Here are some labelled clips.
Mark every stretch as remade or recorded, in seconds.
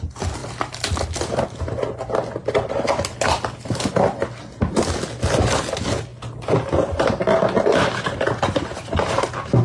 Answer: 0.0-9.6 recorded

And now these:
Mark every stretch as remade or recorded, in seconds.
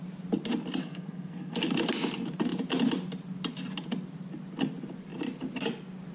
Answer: 0.0-0.8 recorded; 0.8-1.6 remade; 1.6-6.1 recorded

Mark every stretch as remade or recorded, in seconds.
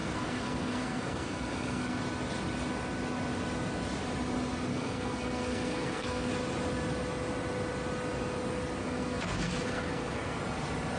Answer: 0.0-2.0 remade; 2.0-4.7 recorded; 4.7-6.3 remade; 6.3-8.8 recorded; 8.8-10.4 remade; 10.4-11.0 recorded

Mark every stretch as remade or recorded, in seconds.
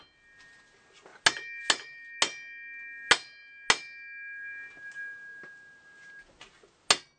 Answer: 0.0-7.2 recorded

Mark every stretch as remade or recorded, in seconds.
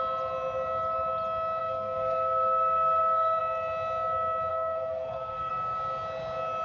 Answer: 0.0-1.6 recorded; 1.6-3.4 remade; 3.4-4.5 recorded; 4.5-5.5 remade; 5.5-6.6 recorded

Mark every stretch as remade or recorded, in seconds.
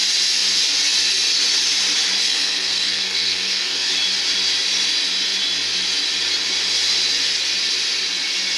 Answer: 0.0-2.2 recorded; 2.2-3.9 remade; 3.9-8.6 recorded